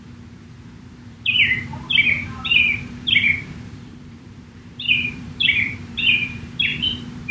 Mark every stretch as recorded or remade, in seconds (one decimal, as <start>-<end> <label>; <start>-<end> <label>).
0.0-7.3 remade